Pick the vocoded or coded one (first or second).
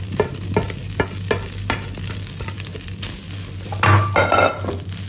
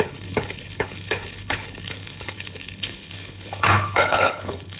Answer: second